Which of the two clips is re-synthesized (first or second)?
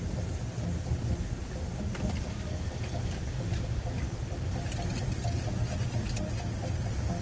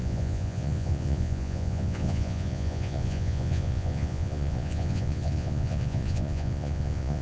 second